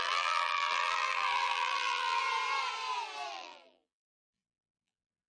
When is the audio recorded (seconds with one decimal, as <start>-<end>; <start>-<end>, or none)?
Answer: 2.2-3.3